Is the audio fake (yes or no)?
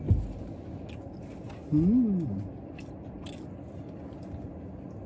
no